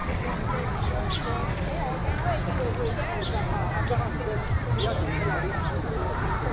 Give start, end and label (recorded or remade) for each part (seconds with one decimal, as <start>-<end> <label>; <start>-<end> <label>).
0.0-0.7 remade; 0.7-6.5 recorded